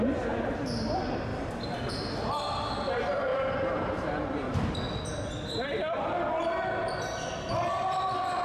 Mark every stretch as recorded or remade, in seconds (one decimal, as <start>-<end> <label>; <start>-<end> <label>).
0.0-1.3 recorded; 1.3-1.9 remade; 1.9-3.3 recorded; 3.3-4.7 remade; 4.7-8.4 recorded